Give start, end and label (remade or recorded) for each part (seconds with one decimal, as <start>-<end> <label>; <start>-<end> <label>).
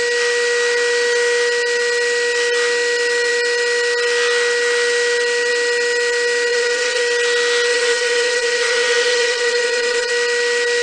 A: 0.0-6.5 recorded; 6.5-7.0 remade; 7.0-7.7 recorded; 7.7-10.1 remade; 10.1-10.8 recorded